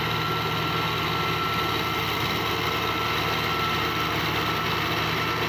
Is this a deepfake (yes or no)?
no